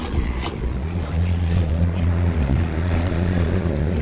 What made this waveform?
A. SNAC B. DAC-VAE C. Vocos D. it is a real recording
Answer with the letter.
C